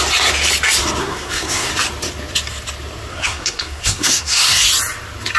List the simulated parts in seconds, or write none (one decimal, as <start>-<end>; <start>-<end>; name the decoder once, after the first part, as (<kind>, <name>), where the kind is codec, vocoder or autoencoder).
1.0-1.7 (codec, SNAC); 3.1-4.6